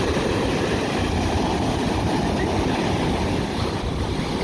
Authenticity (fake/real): real